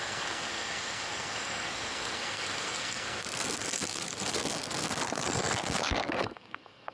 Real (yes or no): no